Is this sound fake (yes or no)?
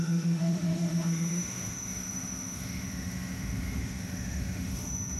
yes